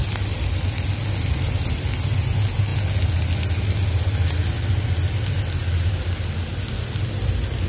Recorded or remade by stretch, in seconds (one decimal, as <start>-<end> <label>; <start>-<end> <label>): 0.0-7.7 recorded